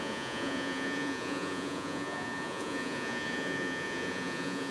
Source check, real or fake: fake